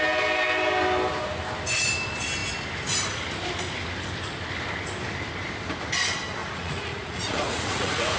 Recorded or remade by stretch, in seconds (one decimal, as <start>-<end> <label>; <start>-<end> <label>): 0.0-6.4 recorded; 6.4-8.2 remade